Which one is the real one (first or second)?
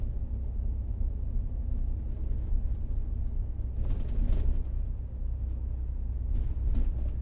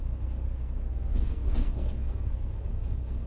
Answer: first